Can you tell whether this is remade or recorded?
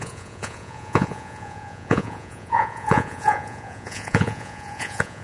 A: remade